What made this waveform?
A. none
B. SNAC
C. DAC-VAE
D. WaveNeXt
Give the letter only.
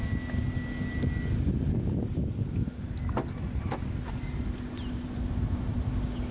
A